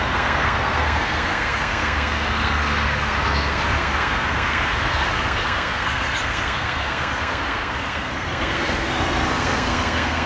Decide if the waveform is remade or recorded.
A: remade